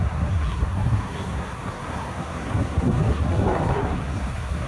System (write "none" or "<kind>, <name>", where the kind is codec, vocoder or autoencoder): codec, SNAC